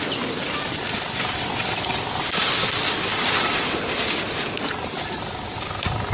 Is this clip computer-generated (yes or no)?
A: no